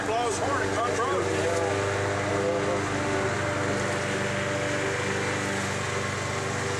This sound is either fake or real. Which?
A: real